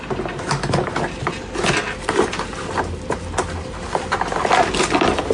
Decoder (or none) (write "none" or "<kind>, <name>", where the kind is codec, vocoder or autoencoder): none